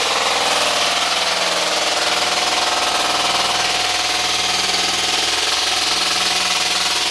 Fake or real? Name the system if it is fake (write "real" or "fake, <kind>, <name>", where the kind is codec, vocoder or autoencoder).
real